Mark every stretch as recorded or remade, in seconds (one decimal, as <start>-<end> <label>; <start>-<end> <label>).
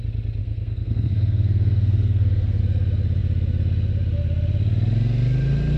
0.0-0.4 recorded; 0.4-2.6 remade; 2.6-5.8 recorded